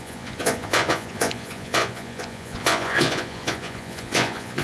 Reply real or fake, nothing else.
fake